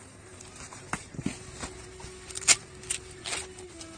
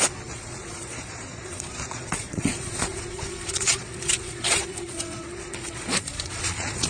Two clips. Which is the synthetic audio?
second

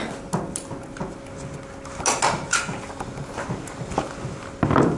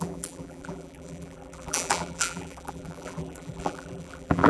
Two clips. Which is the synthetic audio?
second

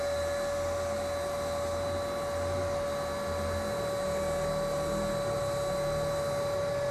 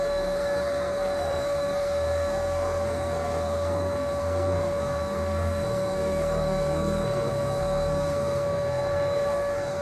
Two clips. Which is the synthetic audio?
second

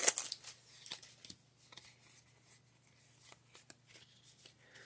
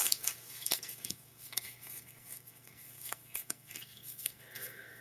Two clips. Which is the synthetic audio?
second